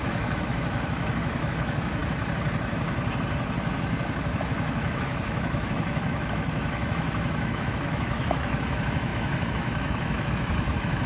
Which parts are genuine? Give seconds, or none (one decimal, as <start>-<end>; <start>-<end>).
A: 2.0-4.2